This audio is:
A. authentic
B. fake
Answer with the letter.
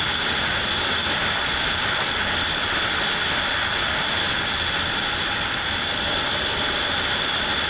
A